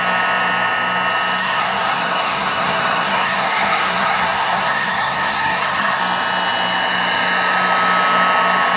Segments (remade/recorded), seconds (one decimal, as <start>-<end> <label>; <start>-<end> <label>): 0.0-1.4 recorded; 1.4-6.0 remade; 6.0-8.8 recorded